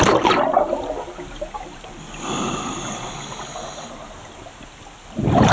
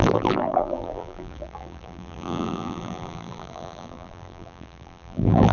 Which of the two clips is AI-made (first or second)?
second